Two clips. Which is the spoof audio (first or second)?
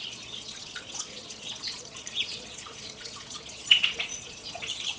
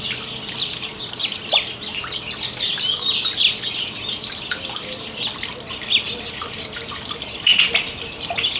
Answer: first